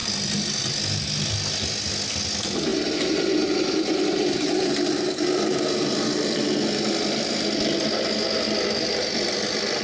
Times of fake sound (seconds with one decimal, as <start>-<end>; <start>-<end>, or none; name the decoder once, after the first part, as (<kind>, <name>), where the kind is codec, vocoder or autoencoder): 2.7-5.9 (vocoder, BigVGAN v2)